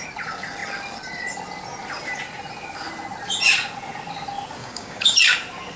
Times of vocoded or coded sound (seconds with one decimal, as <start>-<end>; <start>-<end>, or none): 4.6-5.2